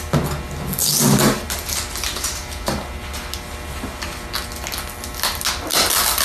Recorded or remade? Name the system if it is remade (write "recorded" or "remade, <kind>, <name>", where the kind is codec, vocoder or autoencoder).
recorded